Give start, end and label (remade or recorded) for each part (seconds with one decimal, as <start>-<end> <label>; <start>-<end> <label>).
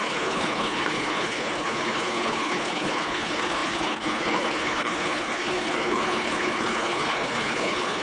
0.0-8.0 remade